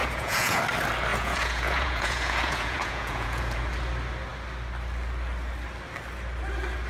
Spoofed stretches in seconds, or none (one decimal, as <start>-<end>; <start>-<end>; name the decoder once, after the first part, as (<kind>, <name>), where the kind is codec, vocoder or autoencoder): 0.0-0.6 (vocoder, Vocos); 1.1-3.6